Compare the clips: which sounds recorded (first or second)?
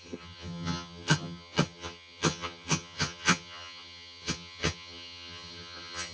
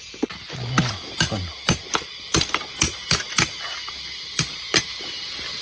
second